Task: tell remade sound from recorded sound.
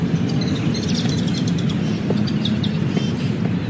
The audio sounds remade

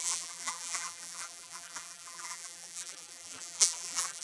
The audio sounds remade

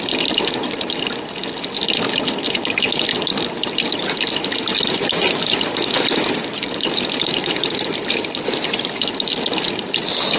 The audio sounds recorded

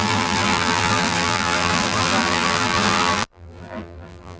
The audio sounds remade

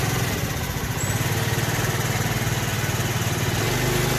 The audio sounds recorded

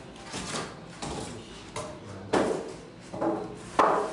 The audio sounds remade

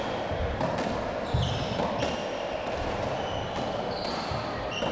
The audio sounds recorded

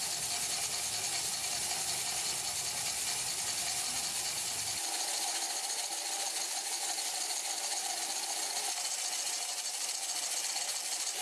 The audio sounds recorded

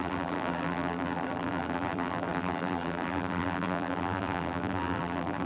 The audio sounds remade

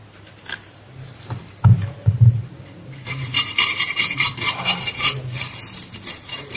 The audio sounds remade